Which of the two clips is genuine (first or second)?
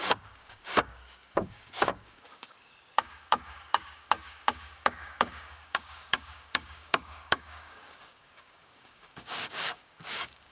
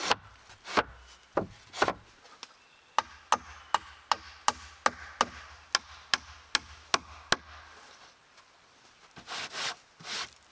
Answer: second